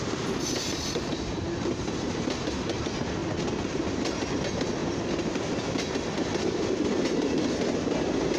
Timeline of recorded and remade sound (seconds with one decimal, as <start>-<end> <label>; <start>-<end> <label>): 0.0-1.1 recorded; 1.1-2.8 remade; 2.8-8.4 recorded